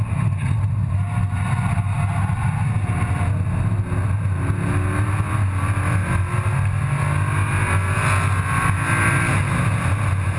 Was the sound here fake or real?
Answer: real